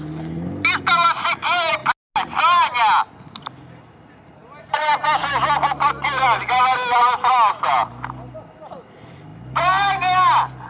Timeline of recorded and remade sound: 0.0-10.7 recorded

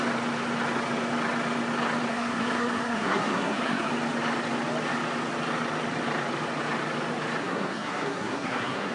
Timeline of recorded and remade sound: 0.0-2.1 recorded; 2.1-3.9 remade; 3.9-7.4 recorded; 7.4-8.9 remade

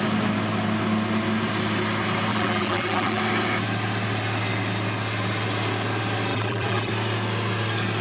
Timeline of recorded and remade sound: 0.0-2.3 recorded; 2.3-3.2 remade; 3.2-6.3 recorded; 6.3-6.9 remade; 6.9-8.0 recorded

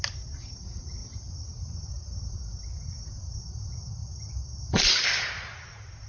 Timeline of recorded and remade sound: 0.0-6.1 recorded

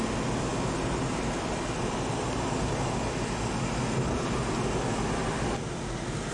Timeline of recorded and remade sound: 0.0-6.3 recorded

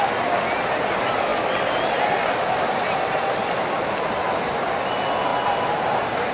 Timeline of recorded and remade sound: 0.0-6.3 recorded

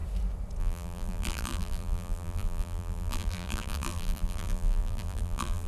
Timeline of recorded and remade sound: 0.0-0.6 recorded; 0.6-5.7 remade